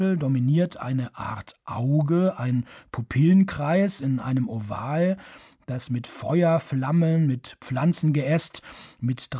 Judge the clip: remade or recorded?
recorded